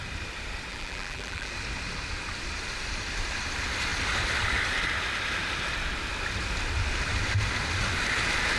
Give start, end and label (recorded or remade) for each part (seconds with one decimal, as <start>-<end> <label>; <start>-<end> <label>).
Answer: 0.0-0.7 recorded; 0.7-1.5 remade; 1.5-8.6 recorded